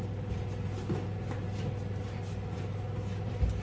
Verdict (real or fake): real